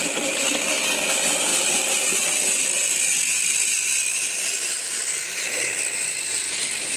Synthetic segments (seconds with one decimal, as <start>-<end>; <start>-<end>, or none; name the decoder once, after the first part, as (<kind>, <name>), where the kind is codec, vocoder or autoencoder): none